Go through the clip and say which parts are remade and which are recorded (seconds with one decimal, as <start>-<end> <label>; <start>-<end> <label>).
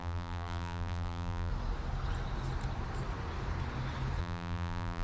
0.0-1.5 remade; 1.5-4.2 recorded; 4.2-5.0 remade